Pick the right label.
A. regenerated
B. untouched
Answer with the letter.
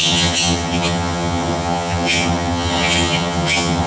A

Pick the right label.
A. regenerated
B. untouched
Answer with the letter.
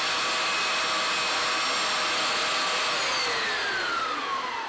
B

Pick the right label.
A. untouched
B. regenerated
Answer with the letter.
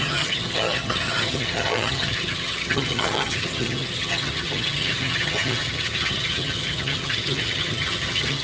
B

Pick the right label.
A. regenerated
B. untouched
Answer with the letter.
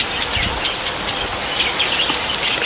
B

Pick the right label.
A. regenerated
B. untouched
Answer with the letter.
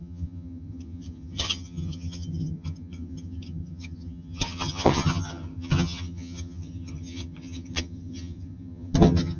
A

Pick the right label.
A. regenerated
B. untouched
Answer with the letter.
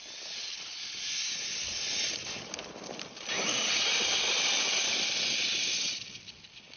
B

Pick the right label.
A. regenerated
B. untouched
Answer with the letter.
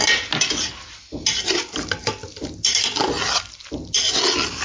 B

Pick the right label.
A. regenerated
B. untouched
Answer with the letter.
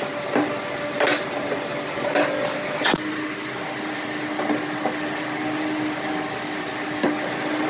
B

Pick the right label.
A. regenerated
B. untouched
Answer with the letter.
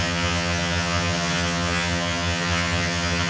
A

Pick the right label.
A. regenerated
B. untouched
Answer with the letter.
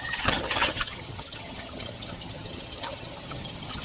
A